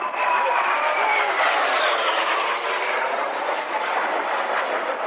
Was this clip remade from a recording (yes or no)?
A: yes